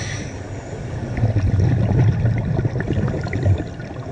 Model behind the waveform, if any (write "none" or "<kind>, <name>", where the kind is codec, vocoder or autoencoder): none